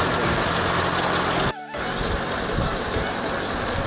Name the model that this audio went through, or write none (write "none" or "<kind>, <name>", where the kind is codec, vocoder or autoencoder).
none